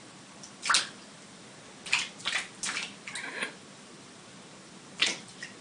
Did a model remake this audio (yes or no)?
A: no